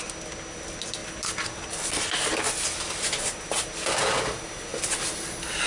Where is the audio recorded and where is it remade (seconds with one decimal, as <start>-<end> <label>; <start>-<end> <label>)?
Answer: 0.0-5.7 recorded